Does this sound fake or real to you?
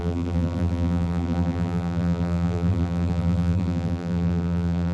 fake